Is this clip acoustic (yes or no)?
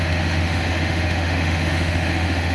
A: no